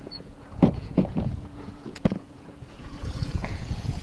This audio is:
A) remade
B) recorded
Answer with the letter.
A